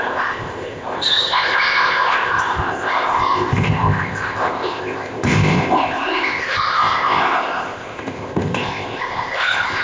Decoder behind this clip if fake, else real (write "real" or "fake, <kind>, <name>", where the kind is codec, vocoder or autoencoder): fake, codec, ZipCodec